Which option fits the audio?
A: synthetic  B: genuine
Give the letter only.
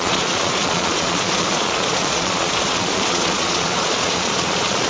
A